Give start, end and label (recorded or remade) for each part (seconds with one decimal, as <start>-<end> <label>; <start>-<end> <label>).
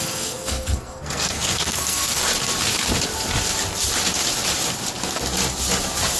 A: 0.0-2.3 remade; 2.3-6.2 recorded